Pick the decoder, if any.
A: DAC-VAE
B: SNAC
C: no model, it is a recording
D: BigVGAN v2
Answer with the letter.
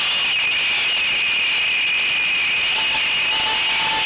C